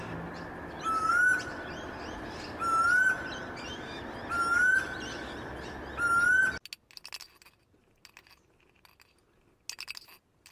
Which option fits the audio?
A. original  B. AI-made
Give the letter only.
A